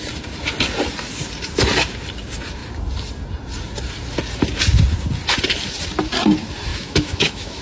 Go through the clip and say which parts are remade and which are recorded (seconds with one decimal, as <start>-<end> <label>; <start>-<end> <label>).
0.0-6.7 recorded; 6.7-7.6 remade